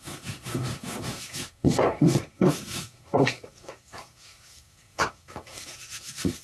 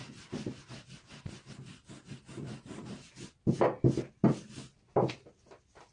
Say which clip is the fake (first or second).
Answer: first